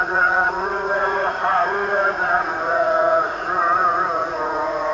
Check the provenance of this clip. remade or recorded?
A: remade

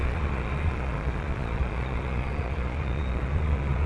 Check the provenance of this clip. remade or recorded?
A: remade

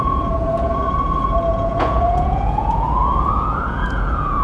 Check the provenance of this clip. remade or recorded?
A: remade